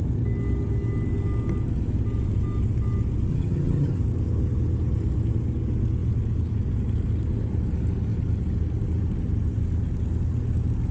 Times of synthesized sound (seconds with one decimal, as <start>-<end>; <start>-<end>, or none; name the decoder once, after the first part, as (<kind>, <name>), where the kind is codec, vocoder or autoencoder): 3.3-4.0 (vocoder, HiFi-GAN)